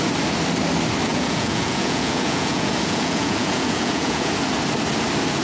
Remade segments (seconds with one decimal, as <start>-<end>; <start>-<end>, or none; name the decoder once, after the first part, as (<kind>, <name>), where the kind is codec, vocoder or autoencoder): 1.1-4.3 (vocoder, Vocos)